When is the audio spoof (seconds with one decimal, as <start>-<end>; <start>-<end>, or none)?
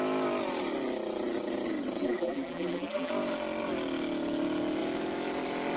2.0-3.1